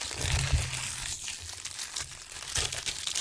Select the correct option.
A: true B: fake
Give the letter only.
A